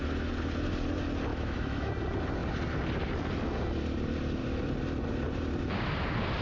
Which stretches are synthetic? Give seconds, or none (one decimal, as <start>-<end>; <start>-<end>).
1.3-1.9